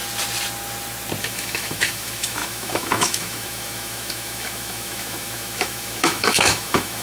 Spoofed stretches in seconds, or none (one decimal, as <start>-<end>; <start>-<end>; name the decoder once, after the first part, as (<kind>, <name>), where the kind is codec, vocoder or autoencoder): 1.2-7.0 (autoencoder, DAC-VAE)